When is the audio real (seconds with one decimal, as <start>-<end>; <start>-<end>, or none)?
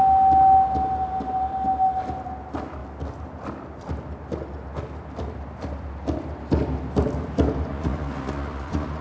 0.0-7.7